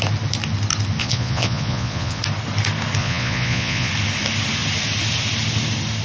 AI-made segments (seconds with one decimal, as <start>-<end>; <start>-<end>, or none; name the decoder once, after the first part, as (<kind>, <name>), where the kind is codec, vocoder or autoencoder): 1.0-2.2 (vocoder, Vocos); 3.0-3.9